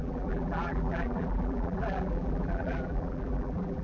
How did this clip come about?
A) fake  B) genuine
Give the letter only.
A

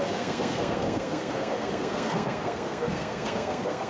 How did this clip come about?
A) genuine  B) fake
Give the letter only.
B